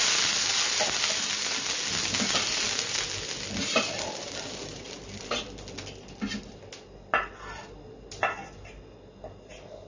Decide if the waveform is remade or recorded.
recorded